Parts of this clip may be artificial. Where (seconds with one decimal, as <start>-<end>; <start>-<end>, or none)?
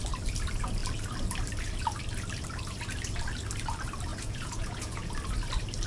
4.1-5.1